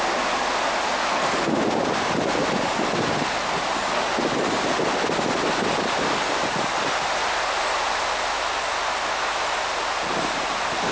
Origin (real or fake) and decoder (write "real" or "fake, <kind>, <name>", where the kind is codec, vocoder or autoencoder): real